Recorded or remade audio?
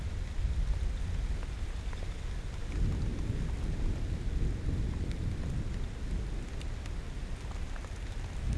recorded